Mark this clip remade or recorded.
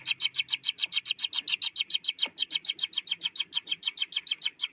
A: recorded